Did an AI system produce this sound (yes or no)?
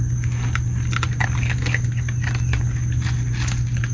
no